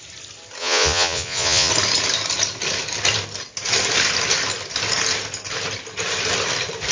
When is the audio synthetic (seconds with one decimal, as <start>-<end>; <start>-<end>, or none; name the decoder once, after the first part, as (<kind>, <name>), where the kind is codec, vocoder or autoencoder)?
0.6-1.7 (vocoder, Vocos)